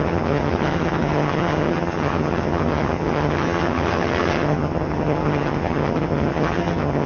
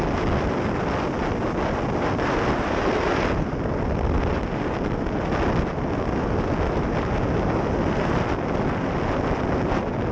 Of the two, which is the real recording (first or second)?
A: second